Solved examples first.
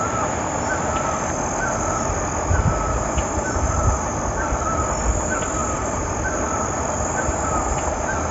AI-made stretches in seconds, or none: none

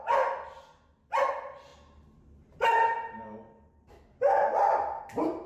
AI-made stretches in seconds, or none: none

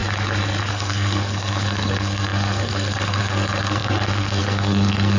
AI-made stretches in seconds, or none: 0.7-5.2